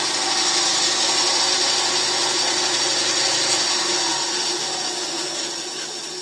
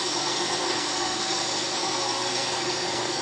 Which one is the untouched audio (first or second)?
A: first